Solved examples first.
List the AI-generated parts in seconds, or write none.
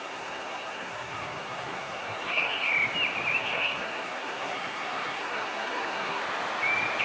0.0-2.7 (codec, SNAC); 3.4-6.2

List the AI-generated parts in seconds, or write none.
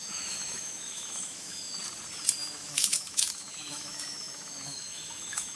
0.0-1.8 (autoencoder, DAC-VAE); 2.4-5.6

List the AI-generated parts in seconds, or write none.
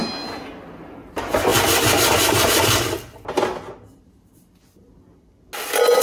none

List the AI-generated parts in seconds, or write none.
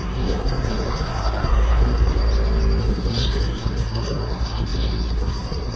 0.0-2.2 (codec, SNAC); 2.8-5.8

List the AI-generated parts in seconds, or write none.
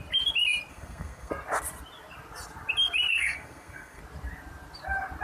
0.7-1.3 (codec, SNAC); 3.1-4.0